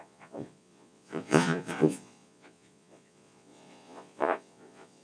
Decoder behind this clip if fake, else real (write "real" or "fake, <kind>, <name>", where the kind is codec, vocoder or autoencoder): fake, vocoder, Vocos